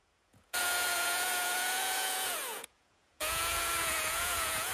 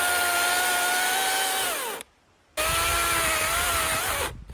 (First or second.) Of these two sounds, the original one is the second